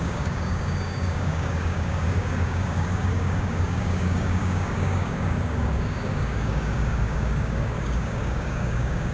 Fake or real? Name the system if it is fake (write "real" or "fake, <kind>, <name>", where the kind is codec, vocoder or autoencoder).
fake, codec, DAC